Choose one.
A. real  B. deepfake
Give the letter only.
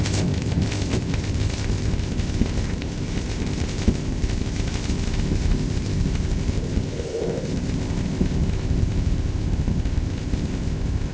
B